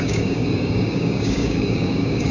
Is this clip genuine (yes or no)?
no